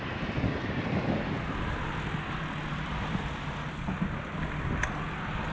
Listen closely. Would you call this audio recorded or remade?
recorded